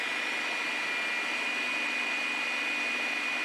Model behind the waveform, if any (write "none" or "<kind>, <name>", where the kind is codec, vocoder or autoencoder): none